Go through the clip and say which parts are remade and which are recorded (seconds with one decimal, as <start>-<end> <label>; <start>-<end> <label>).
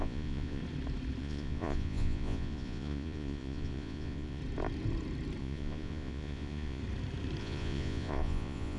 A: 0.0-0.6 remade; 0.6-1.2 recorded; 1.2-4.4 remade; 4.4-5.4 recorded; 5.4-6.8 remade; 6.8-7.4 recorded; 7.4-8.8 remade